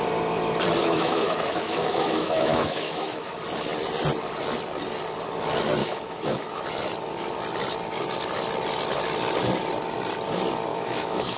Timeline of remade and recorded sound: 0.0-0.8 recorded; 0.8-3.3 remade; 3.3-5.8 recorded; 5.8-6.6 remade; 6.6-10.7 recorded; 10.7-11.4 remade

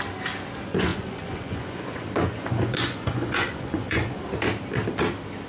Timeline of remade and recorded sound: 0.0-0.9 recorded; 0.9-4.2 remade; 4.2-5.5 recorded

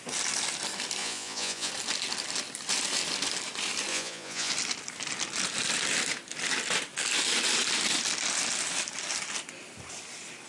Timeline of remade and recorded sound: 0.0-1.0 recorded; 1.0-1.7 remade; 1.7-3.9 recorded; 3.9-4.5 remade; 4.5-10.5 recorded

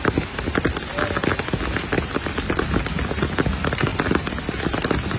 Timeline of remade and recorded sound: 0.0-5.2 recorded

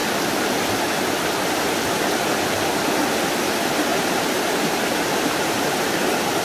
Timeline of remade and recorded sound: 0.0-3.9 recorded; 3.9-5.9 remade; 5.9-6.4 recorded

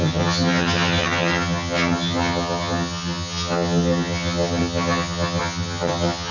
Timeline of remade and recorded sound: 0.0-6.3 remade